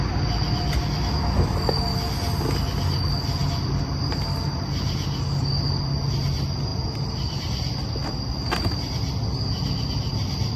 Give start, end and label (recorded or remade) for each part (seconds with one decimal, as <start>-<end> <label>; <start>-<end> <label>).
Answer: 0.0-10.6 recorded